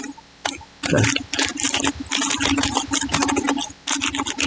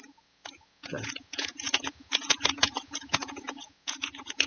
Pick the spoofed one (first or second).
second